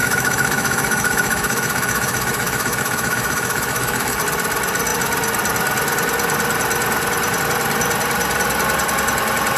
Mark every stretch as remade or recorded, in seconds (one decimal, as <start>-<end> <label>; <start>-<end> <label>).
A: 0.0-4.2 remade; 4.2-9.6 recorded